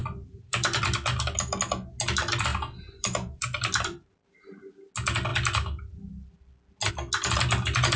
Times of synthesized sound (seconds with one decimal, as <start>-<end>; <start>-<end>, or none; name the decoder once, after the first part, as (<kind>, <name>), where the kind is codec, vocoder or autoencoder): 0.0-0.8 (vocoder, BigVGAN v2); 2.5-4.7